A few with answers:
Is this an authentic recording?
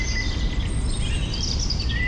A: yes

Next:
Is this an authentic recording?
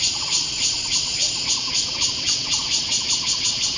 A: no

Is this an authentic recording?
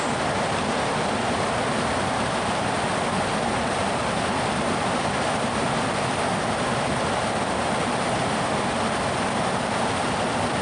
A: yes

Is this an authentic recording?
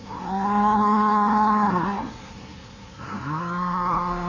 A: no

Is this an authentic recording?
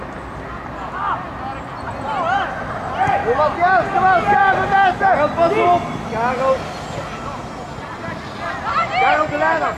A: yes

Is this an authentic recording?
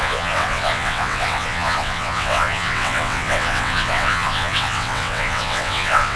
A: no